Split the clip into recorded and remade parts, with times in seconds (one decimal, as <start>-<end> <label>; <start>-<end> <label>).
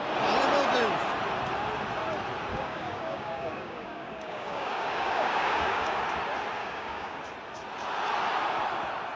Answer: 0.0-2.5 recorded; 2.5-6.0 remade; 6.0-6.6 recorded; 6.6-7.2 remade; 7.2-9.2 recorded